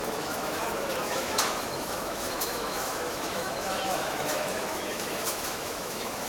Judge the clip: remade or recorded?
remade